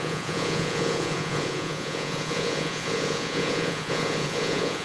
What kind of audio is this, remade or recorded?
remade